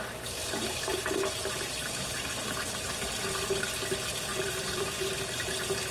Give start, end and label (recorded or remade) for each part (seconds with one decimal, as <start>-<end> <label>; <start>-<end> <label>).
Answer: 0.0-0.4 recorded; 0.4-3.0 remade; 3.0-4.3 recorded; 4.3-5.0 remade; 5.0-5.9 recorded